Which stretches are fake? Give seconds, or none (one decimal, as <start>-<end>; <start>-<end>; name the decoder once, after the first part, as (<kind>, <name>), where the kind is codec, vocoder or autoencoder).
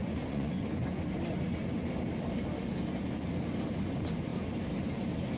0.0-1.0 (vocoder, Vocos)